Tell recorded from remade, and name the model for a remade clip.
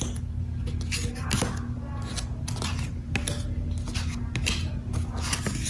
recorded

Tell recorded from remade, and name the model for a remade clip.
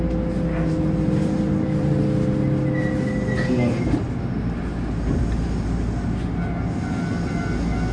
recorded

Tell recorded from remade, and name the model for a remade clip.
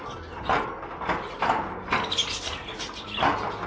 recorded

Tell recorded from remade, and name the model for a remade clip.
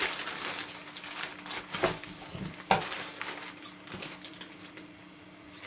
recorded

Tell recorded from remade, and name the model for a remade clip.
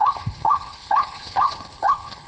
remade, codec, HILCodec